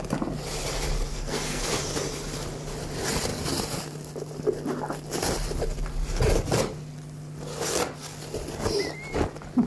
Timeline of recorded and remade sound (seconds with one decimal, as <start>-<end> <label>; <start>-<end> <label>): 0.0-1.1 recorded; 1.1-1.7 remade; 1.7-9.7 recorded